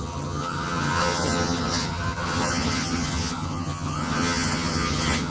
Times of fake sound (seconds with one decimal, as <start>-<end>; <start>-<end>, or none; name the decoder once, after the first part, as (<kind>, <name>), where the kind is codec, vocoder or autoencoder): 0.0-5.3 (vocoder, HiFi-GAN)